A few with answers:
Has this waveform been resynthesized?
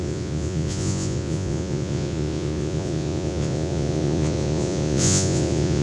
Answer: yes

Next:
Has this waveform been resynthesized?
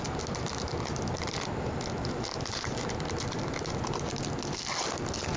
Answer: no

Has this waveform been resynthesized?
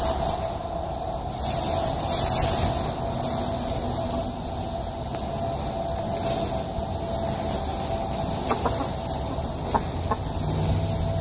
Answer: no